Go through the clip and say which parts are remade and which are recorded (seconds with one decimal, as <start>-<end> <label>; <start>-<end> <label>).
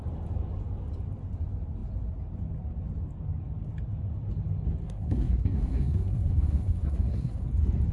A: 0.0-4.8 recorded; 4.8-7.5 remade; 7.5-7.9 recorded